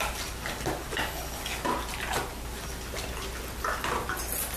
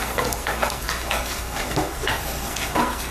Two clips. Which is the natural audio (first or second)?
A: first